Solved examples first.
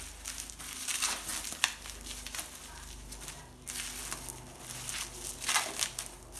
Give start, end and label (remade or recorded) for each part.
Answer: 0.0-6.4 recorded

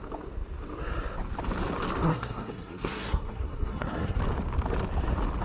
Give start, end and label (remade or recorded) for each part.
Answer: 0.0-2.1 recorded; 2.1-4.2 remade; 4.2-5.4 recorded